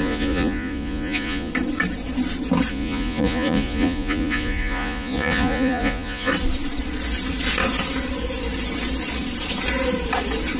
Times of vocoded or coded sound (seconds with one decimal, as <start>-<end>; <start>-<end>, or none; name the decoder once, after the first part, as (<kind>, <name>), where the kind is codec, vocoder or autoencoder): 0.0-1.5 (vocoder, Vocos); 2.7-6.3